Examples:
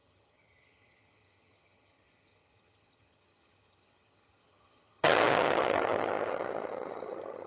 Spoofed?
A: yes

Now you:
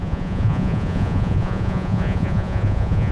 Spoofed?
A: yes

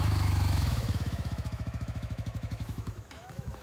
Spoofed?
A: yes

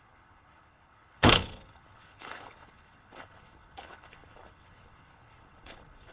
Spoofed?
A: yes